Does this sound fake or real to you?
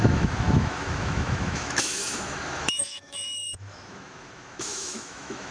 fake